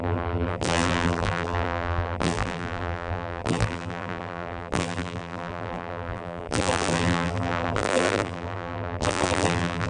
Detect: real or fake fake